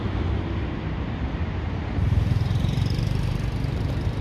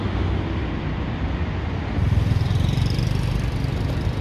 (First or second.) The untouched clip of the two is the second